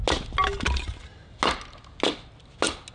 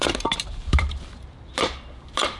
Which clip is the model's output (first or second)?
second